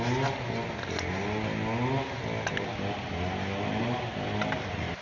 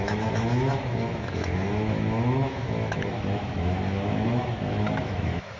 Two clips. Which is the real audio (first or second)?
first